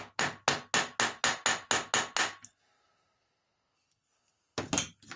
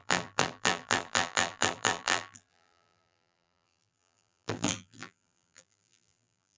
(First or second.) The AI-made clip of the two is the second